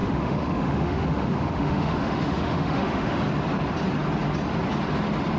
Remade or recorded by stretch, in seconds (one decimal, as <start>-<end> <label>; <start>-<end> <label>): 0.0-3.2 remade; 3.2-5.4 recorded